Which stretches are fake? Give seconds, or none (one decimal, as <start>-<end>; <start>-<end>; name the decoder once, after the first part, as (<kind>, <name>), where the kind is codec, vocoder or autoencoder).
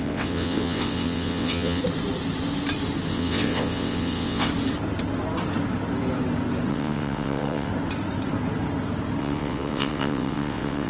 0.0-1.8 (vocoder, WaveNeXt); 3.1-4.5; 6.7-7.7; 9.2-10.9